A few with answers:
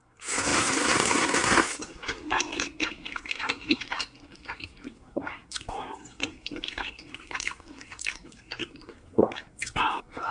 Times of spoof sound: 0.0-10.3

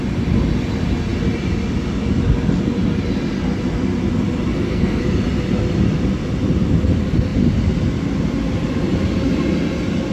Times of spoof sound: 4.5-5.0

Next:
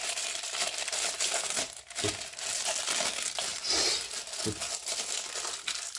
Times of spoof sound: none

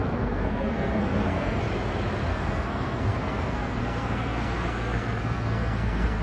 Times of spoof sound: 0.0-1.6; 2.3-6.2

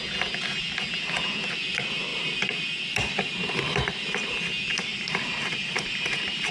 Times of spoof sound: 2.1-4.3; 4.9-6.5